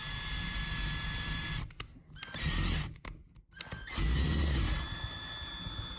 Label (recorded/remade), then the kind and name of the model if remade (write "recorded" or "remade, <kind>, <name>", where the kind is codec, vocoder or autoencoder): recorded